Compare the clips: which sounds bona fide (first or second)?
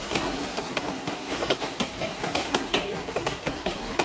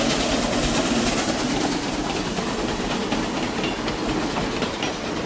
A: second